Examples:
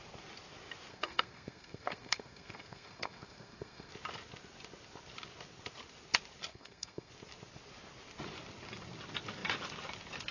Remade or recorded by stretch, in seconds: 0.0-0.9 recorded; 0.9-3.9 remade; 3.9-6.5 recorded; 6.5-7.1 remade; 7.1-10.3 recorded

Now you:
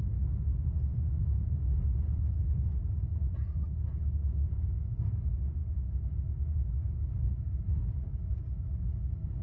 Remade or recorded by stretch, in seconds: 0.0-4.0 recorded; 4.0-4.9 remade; 4.9-9.4 recorded

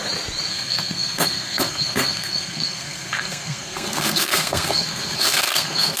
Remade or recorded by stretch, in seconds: 0.0-0.5 recorded; 0.5-6.0 remade

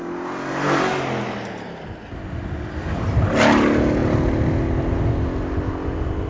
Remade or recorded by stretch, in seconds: 0.0-6.3 recorded

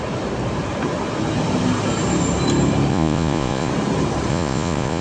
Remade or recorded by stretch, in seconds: 0.0-2.9 recorded; 2.9-3.7 remade; 3.7-4.3 recorded; 4.3-5.0 remade